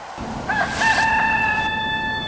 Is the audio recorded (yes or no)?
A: yes